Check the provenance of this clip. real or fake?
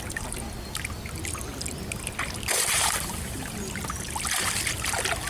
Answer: real